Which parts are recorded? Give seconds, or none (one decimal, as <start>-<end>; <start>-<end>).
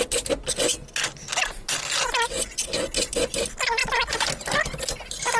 0.0-5.4